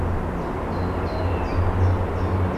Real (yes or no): yes